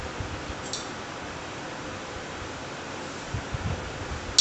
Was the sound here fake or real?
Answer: real